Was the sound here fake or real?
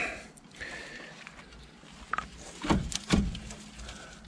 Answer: real